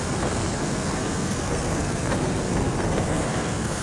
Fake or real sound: fake